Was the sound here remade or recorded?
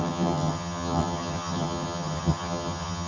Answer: remade